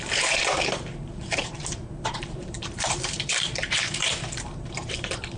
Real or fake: fake